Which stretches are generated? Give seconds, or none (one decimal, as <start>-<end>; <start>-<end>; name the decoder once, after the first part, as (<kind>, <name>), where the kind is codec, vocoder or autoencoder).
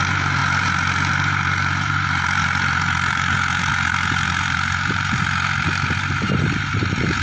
0.0-7.2 (vocoder, BigVGAN v2)